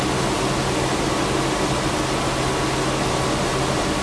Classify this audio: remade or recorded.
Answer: recorded